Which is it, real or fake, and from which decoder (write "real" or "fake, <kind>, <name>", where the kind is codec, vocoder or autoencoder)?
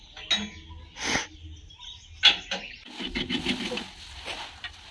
real